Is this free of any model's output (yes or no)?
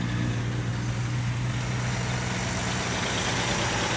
yes